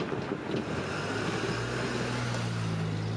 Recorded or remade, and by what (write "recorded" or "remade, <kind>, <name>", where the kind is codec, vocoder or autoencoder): recorded